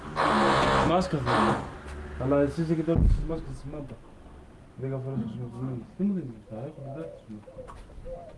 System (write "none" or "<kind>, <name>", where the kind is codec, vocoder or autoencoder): none